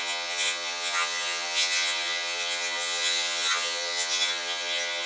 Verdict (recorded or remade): remade